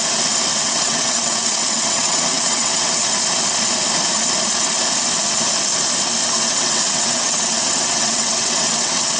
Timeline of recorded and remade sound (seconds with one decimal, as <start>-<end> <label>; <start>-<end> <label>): 0.0-0.5 recorded; 0.5-3.1 remade; 3.1-6.2 recorded; 6.2-9.2 remade